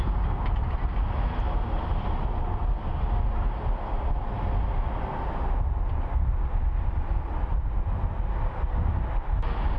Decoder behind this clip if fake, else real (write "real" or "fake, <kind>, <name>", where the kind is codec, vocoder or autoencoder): real